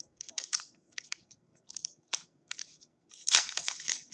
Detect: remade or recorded remade